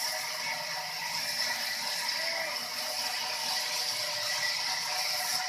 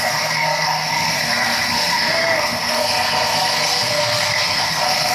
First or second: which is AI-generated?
second